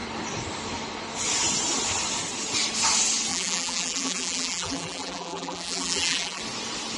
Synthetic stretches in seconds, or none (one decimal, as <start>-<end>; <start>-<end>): 3.3-6.4